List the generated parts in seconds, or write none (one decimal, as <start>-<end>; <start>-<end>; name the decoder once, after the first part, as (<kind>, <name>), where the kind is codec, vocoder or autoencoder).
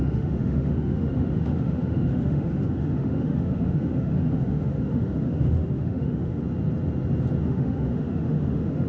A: 0.0-6.4 (autoencoder, DAC-VAE); 7.4-8.9